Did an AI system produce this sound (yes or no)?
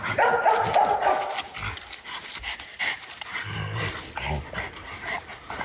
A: no